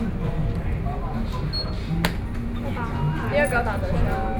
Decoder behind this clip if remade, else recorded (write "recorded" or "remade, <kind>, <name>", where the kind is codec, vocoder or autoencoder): recorded